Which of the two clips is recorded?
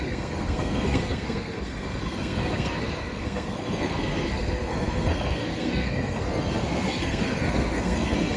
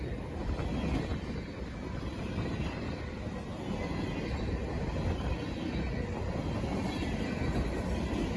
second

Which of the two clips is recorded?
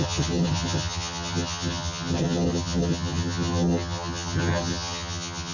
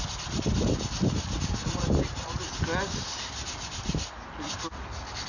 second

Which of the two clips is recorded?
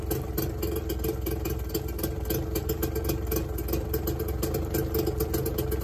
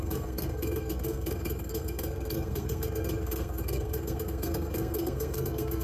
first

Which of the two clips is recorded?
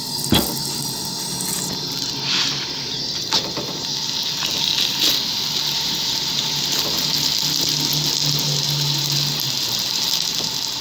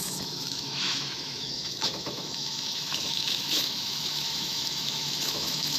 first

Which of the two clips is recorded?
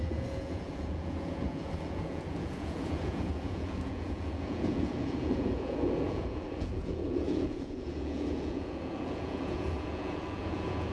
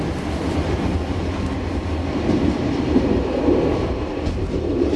second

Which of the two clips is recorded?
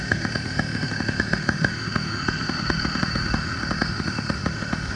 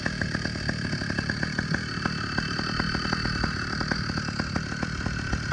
second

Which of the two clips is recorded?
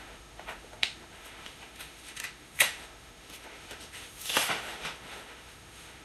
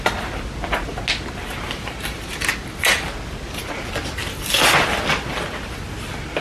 second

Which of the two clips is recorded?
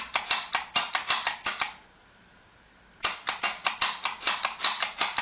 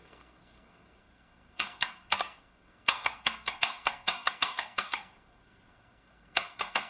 first